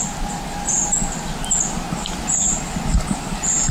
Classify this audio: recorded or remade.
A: recorded